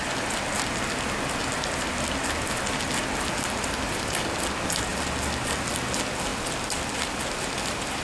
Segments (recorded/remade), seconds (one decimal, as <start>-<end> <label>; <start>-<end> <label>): 0.0-8.0 recorded